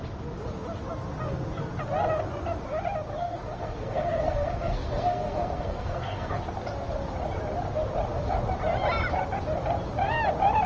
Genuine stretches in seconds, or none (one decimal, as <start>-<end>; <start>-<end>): 0.0-3.2; 6.4-10.7